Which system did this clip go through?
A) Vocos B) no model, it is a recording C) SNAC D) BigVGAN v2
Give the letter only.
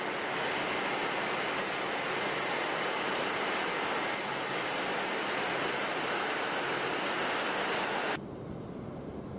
B